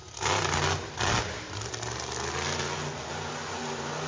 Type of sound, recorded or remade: recorded